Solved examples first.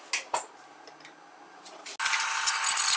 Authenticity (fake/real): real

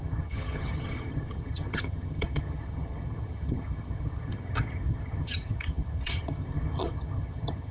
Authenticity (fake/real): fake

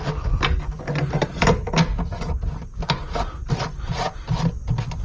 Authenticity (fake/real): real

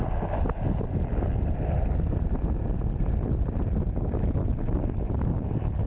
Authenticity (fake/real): real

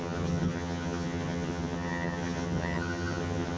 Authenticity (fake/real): fake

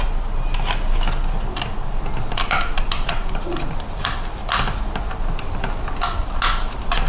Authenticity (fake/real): real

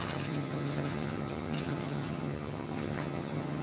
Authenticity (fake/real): fake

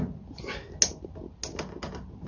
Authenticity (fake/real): real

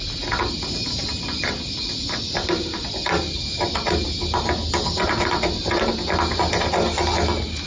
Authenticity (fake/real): real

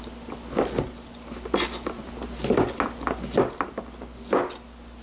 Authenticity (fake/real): real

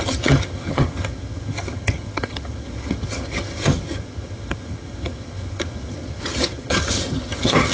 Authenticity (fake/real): fake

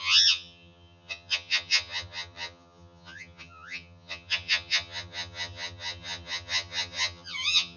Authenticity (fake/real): fake